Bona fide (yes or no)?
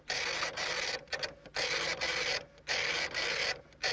no